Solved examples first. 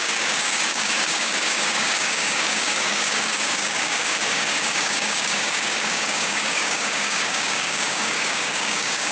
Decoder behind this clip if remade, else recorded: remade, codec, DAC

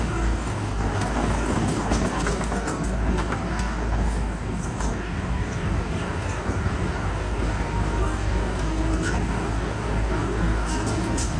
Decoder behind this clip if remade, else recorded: remade, codec, DAC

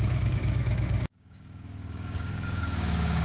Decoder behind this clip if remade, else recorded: remade, codec, DAC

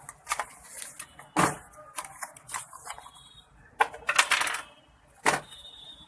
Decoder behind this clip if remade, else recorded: recorded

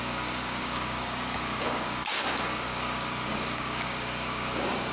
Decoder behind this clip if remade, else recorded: remade, codec, DAC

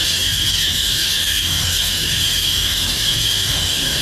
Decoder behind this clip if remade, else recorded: remade, codec, DAC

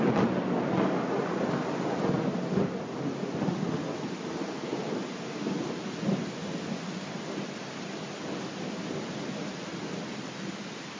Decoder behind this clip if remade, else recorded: recorded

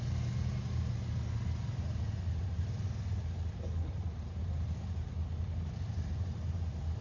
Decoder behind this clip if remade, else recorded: recorded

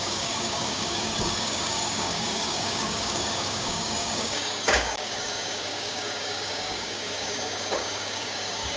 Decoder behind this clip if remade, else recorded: remade, codec, DAC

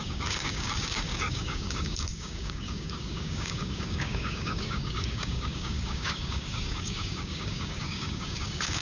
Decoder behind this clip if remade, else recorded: remade, codec, DAC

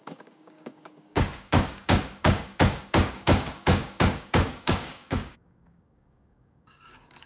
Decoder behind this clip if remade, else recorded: remade, codec, DAC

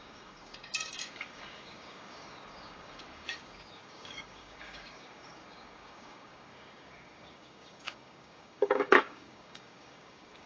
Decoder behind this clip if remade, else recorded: remade, codec, DAC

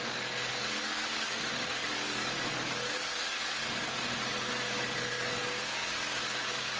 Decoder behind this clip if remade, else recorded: remade, codec, DAC